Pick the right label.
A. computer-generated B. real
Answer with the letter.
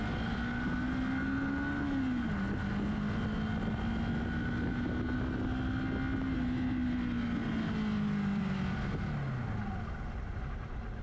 B